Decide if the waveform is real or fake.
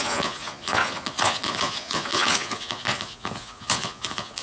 fake